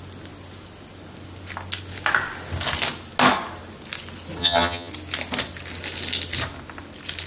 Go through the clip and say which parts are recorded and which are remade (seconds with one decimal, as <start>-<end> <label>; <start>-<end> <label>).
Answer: 0.0-4.4 recorded; 4.4-4.9 remade; 4.9-7.3 recorded